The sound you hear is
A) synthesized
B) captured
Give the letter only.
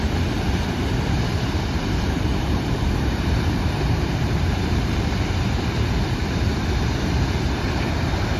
A